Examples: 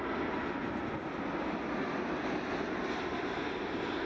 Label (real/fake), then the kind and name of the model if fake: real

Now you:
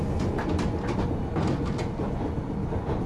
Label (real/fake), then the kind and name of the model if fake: real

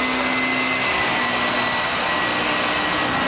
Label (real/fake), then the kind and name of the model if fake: real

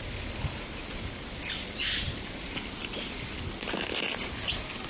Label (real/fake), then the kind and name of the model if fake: real